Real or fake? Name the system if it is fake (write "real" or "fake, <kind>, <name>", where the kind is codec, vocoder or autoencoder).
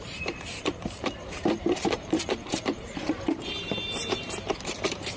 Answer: fake, vocoder, BigVGAN v2